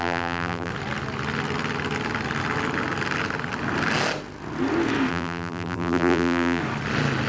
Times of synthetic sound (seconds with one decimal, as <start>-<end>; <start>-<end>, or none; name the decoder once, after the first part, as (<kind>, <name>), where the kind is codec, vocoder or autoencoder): 0.0-0.7 (vocoder, BigVGAN v2); 5.1-6.6